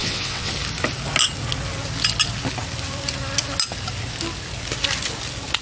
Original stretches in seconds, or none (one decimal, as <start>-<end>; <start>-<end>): 0.5-5.6